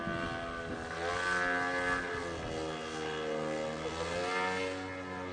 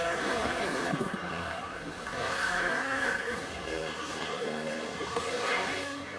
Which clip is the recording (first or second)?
first